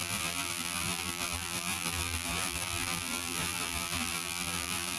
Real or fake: fake